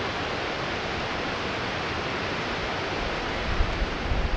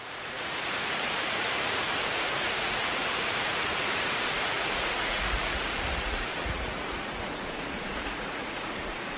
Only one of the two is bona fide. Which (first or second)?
first